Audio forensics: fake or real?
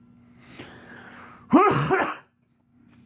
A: real